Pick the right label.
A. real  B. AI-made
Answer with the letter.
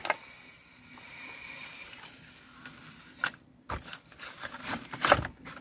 A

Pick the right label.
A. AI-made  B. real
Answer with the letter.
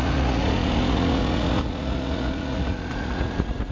A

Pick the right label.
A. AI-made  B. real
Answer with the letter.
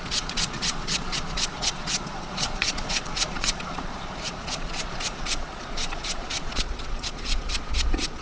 A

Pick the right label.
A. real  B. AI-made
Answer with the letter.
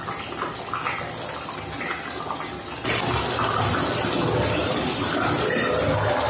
A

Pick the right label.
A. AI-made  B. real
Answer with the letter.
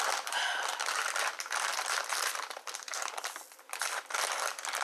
B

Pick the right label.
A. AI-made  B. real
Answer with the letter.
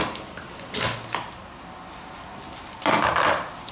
B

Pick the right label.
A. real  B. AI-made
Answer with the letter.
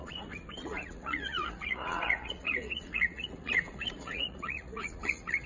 B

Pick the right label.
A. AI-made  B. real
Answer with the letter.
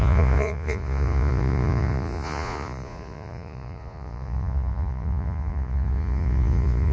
A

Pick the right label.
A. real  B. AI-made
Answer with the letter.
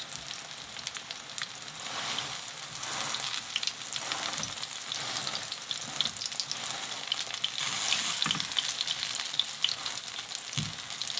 A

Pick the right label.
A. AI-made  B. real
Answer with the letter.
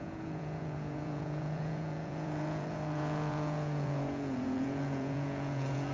A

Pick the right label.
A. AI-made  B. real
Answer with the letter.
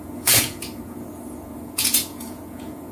A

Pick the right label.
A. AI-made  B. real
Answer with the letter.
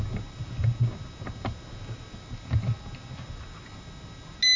B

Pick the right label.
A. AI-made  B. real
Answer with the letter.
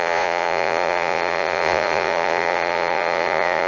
A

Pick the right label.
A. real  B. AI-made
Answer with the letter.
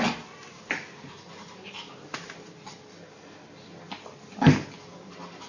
A